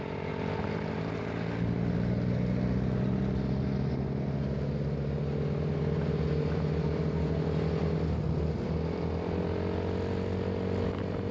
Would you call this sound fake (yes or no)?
no